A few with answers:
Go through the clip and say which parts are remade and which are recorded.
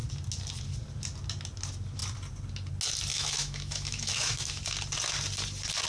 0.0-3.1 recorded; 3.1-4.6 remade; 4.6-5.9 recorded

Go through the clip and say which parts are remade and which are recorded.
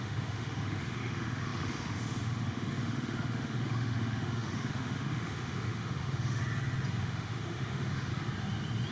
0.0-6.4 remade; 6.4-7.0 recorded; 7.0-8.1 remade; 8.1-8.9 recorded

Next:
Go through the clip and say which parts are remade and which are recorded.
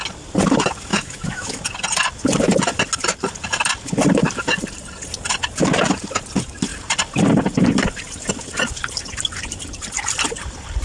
0.0-0.9 recorded; 0.9-1.6 remade; 1.6-10.8 recorded